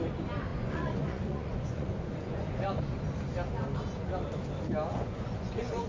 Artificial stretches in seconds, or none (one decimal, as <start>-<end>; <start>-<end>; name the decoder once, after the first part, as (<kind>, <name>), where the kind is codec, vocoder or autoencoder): 0.5-2.8 (vocoder, Vocos); 4.9-5.9